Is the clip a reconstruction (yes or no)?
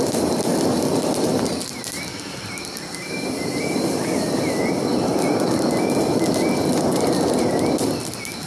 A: yes